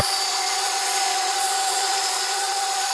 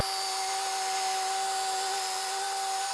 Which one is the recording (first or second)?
second